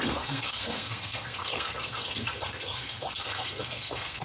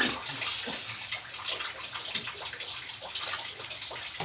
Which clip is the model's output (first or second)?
first